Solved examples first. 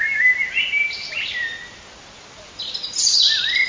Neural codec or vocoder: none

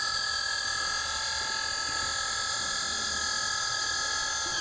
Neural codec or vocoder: none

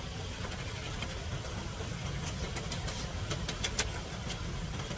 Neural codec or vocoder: none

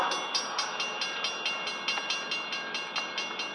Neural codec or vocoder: none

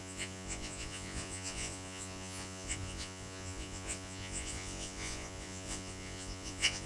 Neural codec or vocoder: vocoder, Vocos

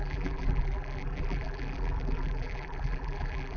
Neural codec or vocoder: vocoder, BigVGAN v2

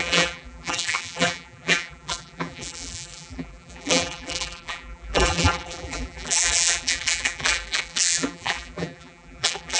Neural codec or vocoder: vocoder, BigVGAN v2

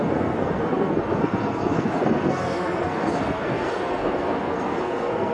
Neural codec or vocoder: codec, SNAC